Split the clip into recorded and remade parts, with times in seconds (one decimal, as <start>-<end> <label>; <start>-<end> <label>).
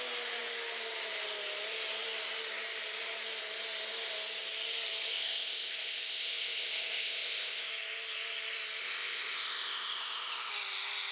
0.0-5.1 recorded; 5.1-7.7 remade; 7.7-8.8 recorded; 8.8-10.5 remade; 10.5-11.1 recorded